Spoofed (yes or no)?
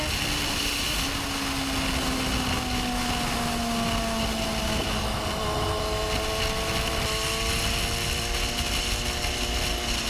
no